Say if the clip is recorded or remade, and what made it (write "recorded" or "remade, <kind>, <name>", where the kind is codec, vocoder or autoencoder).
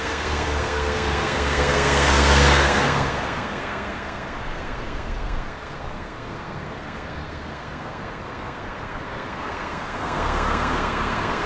remade, codec, SNAC